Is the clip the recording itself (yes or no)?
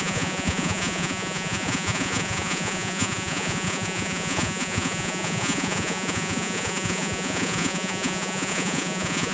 no